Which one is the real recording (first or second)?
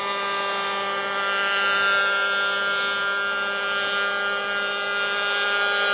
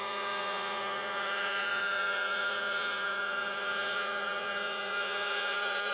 first